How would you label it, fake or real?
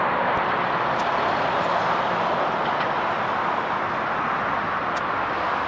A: real